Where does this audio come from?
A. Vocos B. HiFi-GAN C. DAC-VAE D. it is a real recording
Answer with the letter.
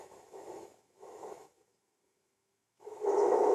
C